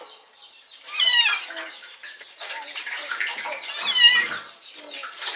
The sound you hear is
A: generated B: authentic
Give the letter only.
A